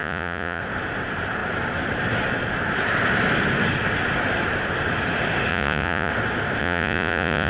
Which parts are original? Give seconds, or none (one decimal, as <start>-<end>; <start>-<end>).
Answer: 0.6-5.5; 6.1-6.6